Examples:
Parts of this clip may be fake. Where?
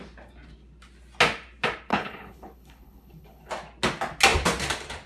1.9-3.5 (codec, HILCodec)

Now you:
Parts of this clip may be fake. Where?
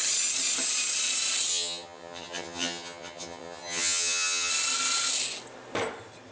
1.5-4.5 (vocoder, HiFi-GAN)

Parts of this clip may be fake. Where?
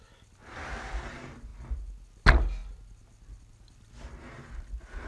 none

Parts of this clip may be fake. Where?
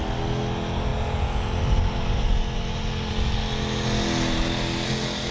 none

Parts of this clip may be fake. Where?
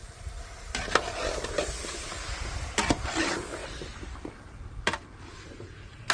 none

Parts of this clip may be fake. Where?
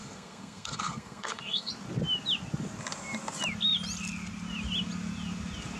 0.0-1.7 (codec, SNAC)